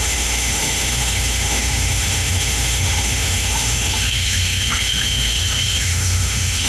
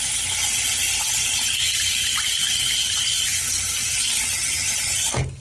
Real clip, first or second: second